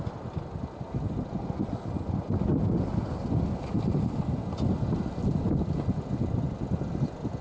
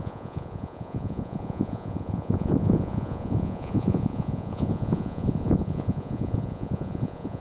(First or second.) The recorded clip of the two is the first